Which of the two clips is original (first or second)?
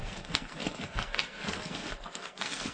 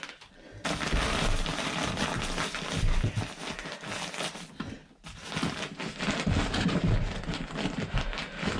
second